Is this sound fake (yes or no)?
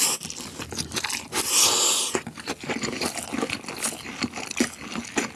no